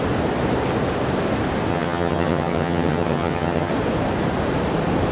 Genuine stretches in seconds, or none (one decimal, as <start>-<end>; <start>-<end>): 0.0-1.7; 3.7-5.1